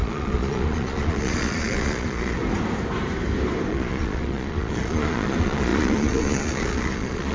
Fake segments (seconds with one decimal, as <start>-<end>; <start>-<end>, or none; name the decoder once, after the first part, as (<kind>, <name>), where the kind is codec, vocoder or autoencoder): 0.0-2.4 (vocoder, Vocos); 3.7-7.3